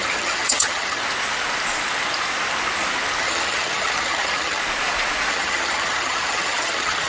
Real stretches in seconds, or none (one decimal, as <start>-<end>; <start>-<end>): 1.0-3.2; 4.6-5.3